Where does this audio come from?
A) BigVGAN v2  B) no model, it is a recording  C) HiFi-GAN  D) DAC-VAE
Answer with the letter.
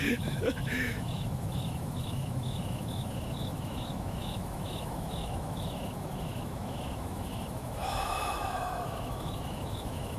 D